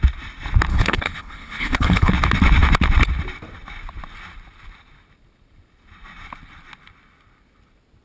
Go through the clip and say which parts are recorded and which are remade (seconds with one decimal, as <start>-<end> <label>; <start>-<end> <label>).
0.0-0.7 recorded; 0.7-2.1 remade; 2.1-8.0 recorded